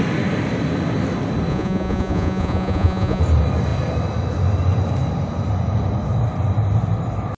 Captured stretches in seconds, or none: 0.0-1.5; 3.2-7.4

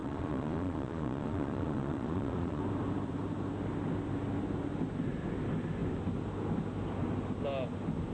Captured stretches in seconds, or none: 2.6-8.1

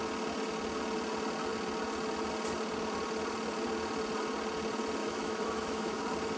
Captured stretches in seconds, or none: 0.0-5.0; 6.0-6.4

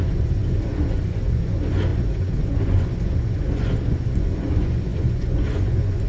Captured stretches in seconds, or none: none

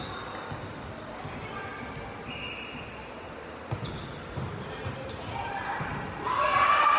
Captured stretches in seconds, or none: 0.0-7.0

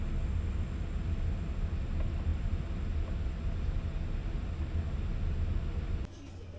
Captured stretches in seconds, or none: 0.0-6.6

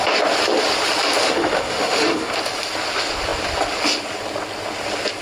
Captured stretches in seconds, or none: 0.0-1.2; 2.3-5.2